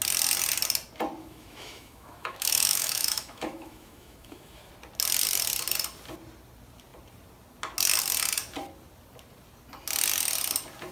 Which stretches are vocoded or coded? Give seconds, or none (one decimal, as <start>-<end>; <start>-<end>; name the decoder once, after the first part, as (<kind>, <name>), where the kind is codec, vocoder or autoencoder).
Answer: 1.2-4.7 (autoencoder, DAC-VAE)